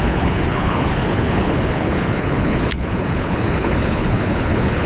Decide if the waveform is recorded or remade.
remade